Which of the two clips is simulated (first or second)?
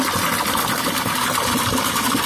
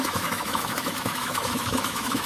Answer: second